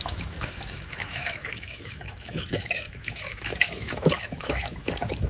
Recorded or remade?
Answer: remade